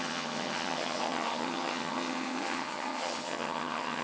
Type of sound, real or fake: fake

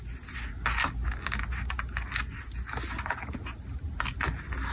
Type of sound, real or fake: real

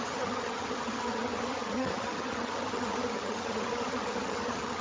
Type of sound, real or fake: fake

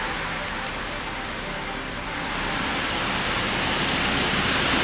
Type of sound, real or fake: real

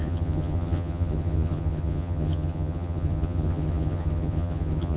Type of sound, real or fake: fake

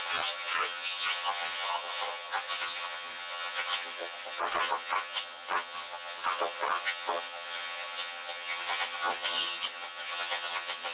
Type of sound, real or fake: fake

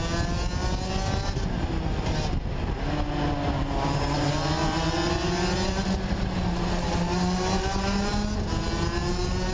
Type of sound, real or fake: real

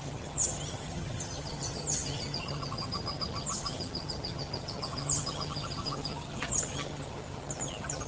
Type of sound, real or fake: fake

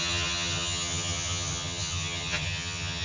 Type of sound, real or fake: fake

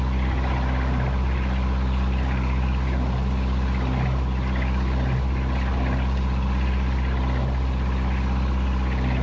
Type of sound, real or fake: real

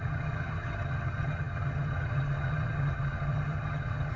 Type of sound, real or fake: fake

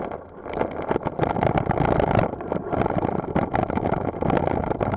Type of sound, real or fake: real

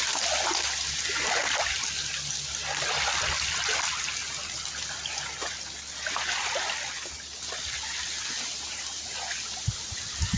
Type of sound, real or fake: real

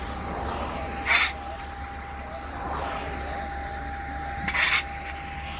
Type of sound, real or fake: real